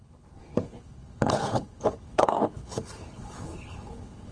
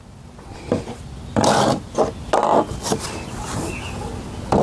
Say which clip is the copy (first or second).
first